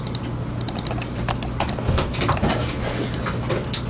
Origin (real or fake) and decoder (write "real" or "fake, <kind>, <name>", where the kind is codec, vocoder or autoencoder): real